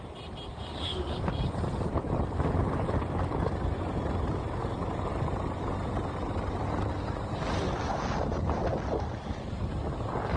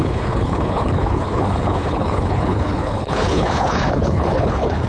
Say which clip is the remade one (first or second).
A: second